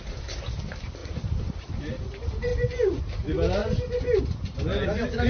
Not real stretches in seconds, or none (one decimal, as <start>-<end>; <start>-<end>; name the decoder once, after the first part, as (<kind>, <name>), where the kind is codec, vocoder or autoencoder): 1.0-1.8 (vocoder, BigVGAN v2)